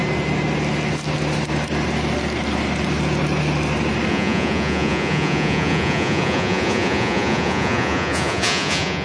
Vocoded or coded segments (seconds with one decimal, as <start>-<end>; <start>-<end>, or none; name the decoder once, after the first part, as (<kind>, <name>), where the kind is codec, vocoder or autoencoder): 4.1-9.0 (vocoder, Vocos)